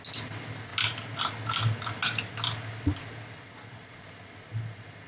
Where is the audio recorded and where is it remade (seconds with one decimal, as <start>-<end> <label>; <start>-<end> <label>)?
0.0-5.1 recorded